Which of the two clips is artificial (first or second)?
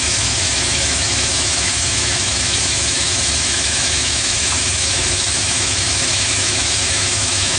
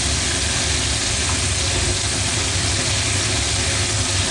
first